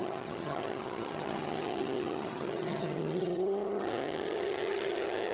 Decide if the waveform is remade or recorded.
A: remade